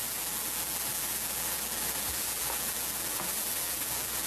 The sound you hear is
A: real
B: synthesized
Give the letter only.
B